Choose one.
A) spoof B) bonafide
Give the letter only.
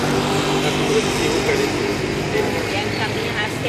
B